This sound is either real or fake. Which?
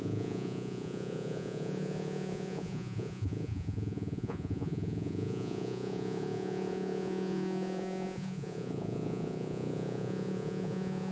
fake